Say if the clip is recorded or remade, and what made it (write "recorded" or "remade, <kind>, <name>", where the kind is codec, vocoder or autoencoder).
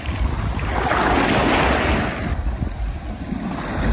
recorded